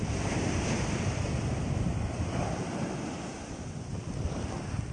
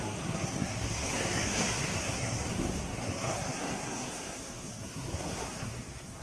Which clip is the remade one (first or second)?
second